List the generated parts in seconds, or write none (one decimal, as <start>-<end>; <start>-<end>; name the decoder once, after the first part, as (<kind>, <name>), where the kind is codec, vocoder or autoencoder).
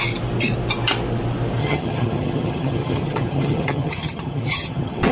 1.6-5.1 (vocoder, HiFi-GAN)